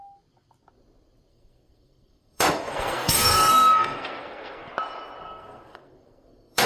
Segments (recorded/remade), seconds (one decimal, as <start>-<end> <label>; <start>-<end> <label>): 0.0-1.3 recorded; 1.3-4.7 remade; 4.7-5.2 recorded; 5.2-6.7 remade